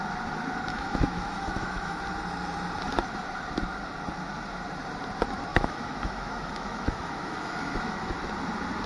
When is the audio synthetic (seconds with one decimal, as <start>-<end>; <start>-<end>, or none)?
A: 0.7-2.0; 5.5-8.1